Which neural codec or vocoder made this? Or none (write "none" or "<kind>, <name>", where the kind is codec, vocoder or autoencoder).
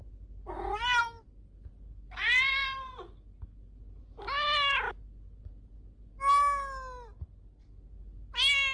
none